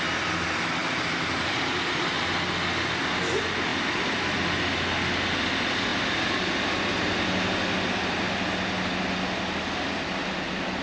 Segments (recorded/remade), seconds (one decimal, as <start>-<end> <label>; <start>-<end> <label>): 0.0-0.8 recorded; 0.8-2.4 remade; 2.4-10.8 recorded